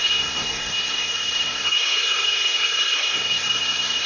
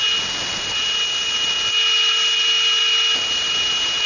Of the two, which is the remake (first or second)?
first